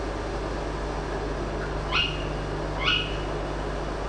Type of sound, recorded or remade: recorded